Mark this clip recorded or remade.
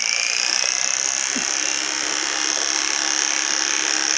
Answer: recorded